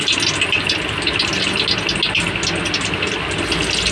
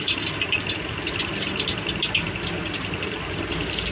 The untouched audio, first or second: first